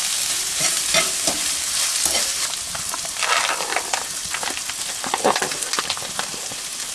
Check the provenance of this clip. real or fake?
fake